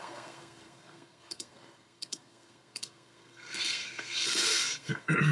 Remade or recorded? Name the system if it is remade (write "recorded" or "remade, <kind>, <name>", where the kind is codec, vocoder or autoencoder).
remade, codec, SNAC